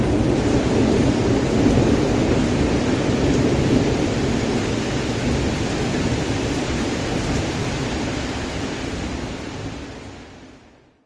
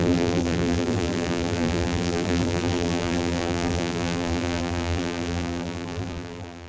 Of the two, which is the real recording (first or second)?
first